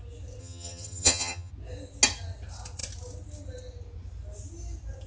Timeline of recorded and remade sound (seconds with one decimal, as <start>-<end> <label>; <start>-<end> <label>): 0.0-0.4 recorded; 0.4-1.5 remade; 1.5-5.1 recorded